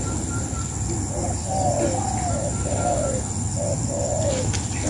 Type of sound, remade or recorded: recorded